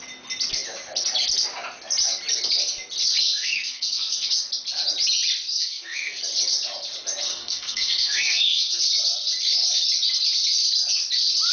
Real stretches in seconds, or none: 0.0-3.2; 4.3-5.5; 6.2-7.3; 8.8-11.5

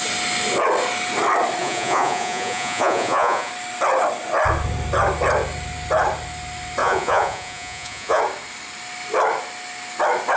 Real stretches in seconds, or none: 0.0-1.6; 3.5-6.8; 8.2-10.4

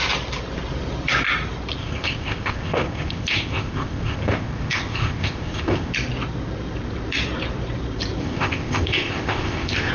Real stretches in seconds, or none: 0.0-1.8; 5.9-8.2

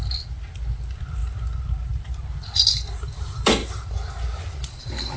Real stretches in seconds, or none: 0.0-5.2

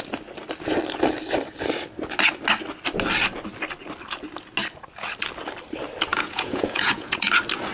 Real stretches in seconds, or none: 0.0-6.1; 7.3-7.7